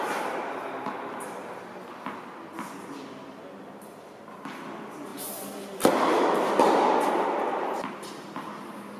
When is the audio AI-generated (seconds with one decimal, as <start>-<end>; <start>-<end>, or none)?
none

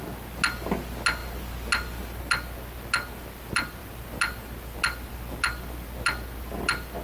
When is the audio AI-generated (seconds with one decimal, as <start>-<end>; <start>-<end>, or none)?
none

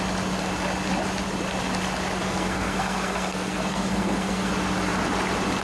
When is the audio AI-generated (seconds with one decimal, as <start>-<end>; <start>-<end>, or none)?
2.2-4.5

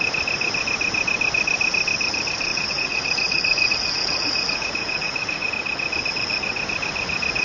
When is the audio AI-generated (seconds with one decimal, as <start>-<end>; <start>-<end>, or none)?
2.5-5.5

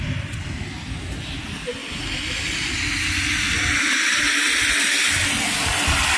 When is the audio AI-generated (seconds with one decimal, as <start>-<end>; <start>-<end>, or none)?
none

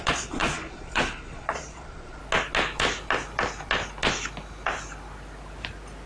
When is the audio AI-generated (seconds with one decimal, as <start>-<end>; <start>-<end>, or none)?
0.0-2.2

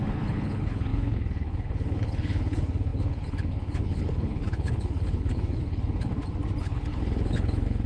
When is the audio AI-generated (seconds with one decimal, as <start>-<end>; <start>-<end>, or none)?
0.0-6.1; 6.6-7.9

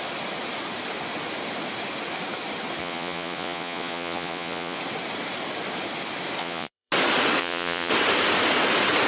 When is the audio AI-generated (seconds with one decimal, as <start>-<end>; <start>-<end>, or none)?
2.8-4.8; 6.4-6.9; 7.4-7.9